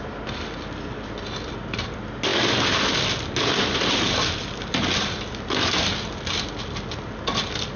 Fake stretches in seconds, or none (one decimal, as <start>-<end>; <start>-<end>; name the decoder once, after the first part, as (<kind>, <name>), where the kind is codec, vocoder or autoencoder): none